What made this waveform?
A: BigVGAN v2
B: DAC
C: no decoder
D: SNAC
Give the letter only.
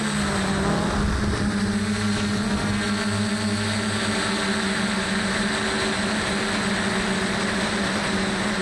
C